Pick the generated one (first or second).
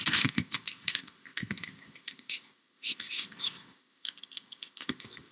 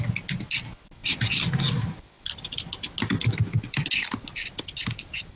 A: first